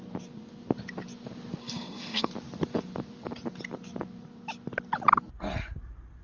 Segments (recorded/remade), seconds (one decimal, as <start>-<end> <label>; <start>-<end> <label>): 0.0-1.6 recorded; 1.6-2.3 remade; 2.3-6.2 recorded